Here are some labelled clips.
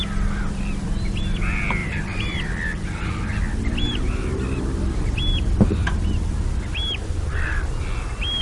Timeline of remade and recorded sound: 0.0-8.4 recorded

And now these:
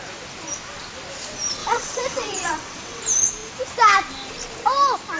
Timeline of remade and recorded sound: 0.0-1.6 recorded; 1.6-3.0 remade; 3.0-5.2 recorded

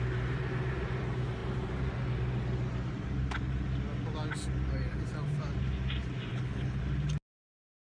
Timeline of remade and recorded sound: 0.0-6.3 recorded; 6.3-6.8 remade; 6.8-7.8 recorded

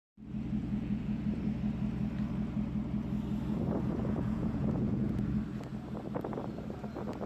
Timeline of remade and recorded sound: 0.0-0.6 recorded; 0.6-1.2 remade; 1.2-4.0 recorded; 4.0-5.3 remade; 5.3-7.3 recorded

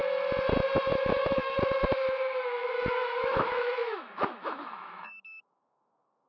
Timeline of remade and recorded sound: 0.0-0.9 recorded; 0.9-6.3 remade